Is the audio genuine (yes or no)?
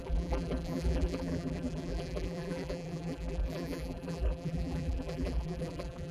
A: no